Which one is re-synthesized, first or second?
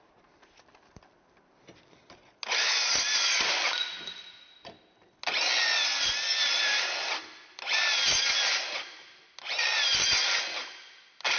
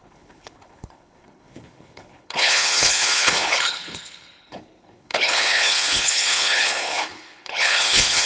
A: second